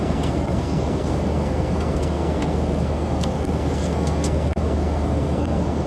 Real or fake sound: fake